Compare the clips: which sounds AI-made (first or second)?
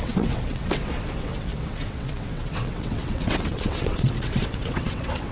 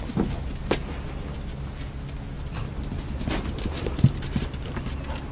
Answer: first